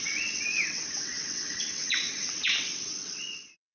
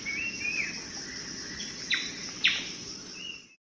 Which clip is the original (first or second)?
second